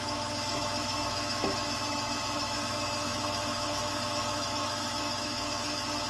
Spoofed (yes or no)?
yes